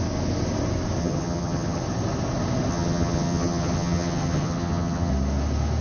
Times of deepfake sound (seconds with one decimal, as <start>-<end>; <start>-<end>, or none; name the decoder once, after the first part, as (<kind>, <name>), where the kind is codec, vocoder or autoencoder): 1.0-1.8 (vocoder, HiFi-GAN); 2.7-5.1